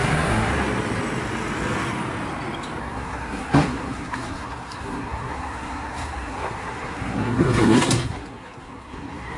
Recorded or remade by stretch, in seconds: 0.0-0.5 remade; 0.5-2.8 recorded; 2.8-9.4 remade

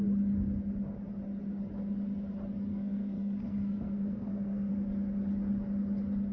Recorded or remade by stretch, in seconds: 0.0-2.7 recorded; 2.7-4.7 remade; 4.7-6.3 recorded

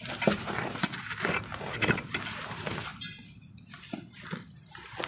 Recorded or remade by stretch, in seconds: 0.0-5.1 recorded

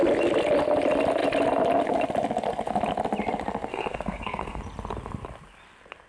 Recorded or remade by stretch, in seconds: 0.0-3.7 recorded; 3.7-4.6 remade; 4.6-6.1 recorded